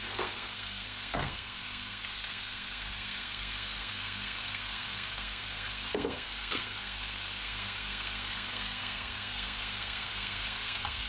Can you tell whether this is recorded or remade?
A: remade